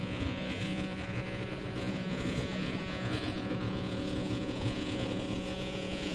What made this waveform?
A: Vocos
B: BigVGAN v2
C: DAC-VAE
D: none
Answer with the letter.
A